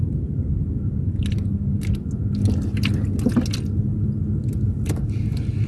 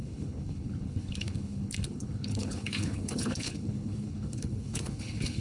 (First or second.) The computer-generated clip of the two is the second